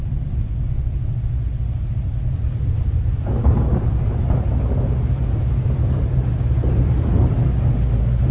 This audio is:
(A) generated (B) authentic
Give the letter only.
B